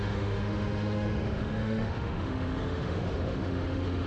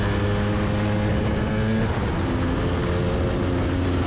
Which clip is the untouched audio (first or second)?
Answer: second